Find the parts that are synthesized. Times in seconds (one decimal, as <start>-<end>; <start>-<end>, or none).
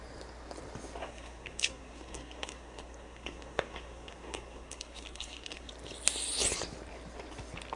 1.0-5.7